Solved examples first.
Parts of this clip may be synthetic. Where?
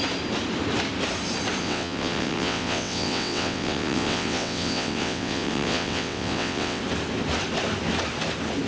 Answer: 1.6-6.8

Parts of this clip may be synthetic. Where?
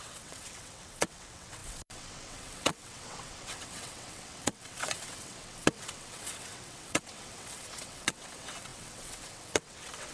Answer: 0.0-10.1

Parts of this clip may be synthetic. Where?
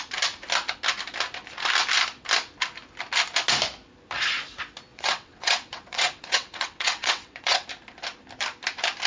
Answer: 4.9-7.7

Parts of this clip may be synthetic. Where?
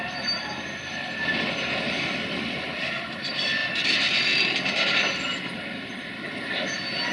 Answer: none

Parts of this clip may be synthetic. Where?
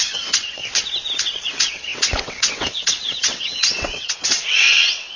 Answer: 0.0-0.6; 1.2-5.2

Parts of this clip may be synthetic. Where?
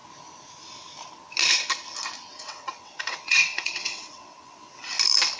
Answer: 2.3-4.8